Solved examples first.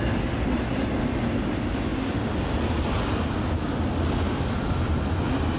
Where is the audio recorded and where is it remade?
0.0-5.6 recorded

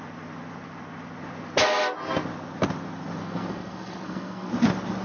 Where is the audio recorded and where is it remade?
0.0-3.2 recorded; 3.2-4.5 remade; 4.5-5.0 recorded

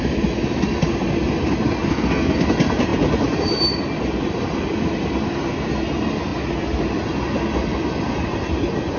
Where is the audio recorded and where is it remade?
0.0-1.9 recorded; 1.9-2.4 remade; 2.4-9.0 recorded

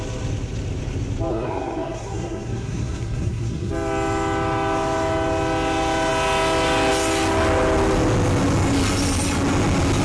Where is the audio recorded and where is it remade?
0.0-1.3 recorded; 1.3-3.7 remade; 3.7-10.0 recorded

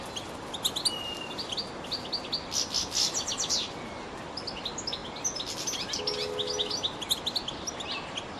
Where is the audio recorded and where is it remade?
0.0-8.4 recorded

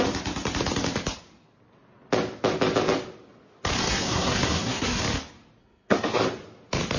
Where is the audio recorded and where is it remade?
0.0-3.8 recorded; 3.8-5.0 remade; 5.0-5.6 recorded; 5.6-6.2 remade; 6.2-7.0 recorded

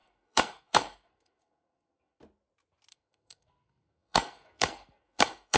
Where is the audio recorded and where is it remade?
0.0-2.2 remade; 2.2-2.9 recorded; 2.9-5.6 remade